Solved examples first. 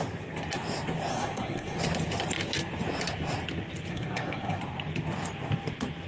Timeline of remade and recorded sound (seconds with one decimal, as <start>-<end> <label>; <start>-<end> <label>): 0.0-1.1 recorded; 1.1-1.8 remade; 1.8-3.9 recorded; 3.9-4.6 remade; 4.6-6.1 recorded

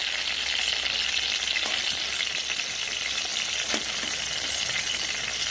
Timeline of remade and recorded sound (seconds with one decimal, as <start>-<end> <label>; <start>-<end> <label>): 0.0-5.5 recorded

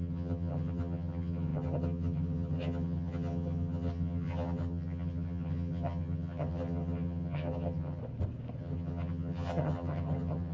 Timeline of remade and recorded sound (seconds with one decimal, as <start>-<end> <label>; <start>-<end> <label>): 0.0-8.0 remade; 8.0-8.6 recorded; 8.6-10.5 remade

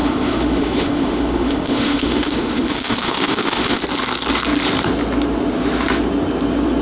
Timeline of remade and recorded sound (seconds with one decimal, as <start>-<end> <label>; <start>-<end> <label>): 0.0-3.8 remade; 3.8-6.8 recorded

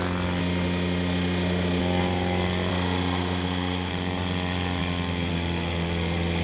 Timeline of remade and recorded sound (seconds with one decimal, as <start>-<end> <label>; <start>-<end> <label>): 0.0-0.4 recorded; 0.4-1.8 remade; 1.8-2.7 recorded; 2.7-3.9 remade; 3.9-6.4 recorded

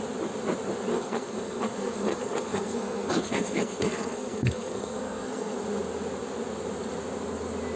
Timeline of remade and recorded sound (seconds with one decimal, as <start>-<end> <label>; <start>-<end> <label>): 0.0-0.9 recorded; 0.9-5.6 remade; 5.6-7.8 recorded

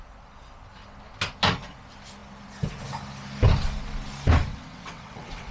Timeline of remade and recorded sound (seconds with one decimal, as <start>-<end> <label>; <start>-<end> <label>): 0.0-4.5 recorded; 4.5-5.5 remade

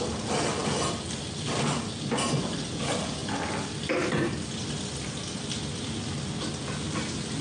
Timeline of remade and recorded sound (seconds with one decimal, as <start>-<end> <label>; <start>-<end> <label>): 0.0-7.4 recorded